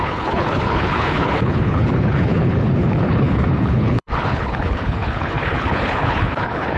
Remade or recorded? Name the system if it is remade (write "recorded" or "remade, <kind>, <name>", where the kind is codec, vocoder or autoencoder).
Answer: remade, codec, HILCodec